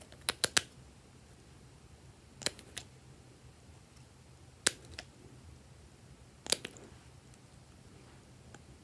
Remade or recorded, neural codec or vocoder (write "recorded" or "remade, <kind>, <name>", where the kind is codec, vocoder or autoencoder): recorded